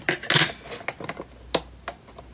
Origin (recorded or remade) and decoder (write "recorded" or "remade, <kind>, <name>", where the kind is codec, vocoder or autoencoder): recorded